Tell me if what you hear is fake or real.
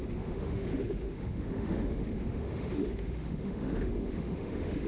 fake